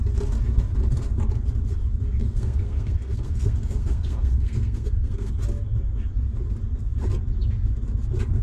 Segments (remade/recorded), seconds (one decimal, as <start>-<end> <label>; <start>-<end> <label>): 0.0-2.2 recorded; 2.2-5.3 remade; 5.3-8.4 recorded